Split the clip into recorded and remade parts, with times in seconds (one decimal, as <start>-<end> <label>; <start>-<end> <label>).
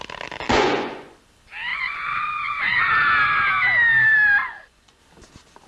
0.0-0.5 recorded; 0.5-1.2 remade; 1.2-1.7 recorded; 1.7-2.9 remade; 2.9-4.4 recorded; 4.4-5.0 remade; 5.0-5.7 recorded